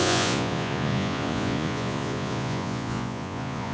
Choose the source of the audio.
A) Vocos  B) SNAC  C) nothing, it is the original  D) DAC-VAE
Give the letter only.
A